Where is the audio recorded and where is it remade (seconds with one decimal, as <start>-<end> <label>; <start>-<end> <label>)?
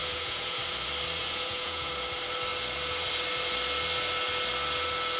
0.0-0.6 remade; 0.6-1.2 recorded; 1.2-1.9 remade; 1.9-5.2 recorded